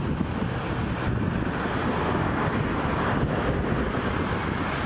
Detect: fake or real real